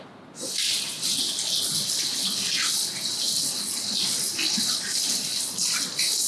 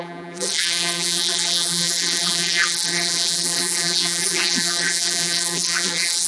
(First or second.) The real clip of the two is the first